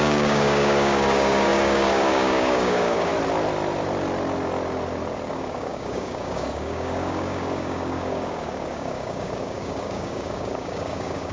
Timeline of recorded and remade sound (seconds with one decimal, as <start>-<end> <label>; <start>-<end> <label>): 0.0-3.1 remade; 3.1-5.3 recorded; 5.3-11.3 remade